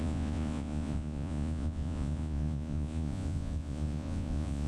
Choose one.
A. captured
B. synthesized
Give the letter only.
B